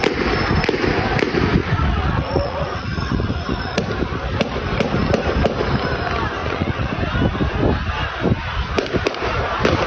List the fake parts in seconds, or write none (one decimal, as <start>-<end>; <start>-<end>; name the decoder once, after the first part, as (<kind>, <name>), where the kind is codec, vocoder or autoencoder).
1.6-3.8 (vocoder, Vocos); 6.4-6.9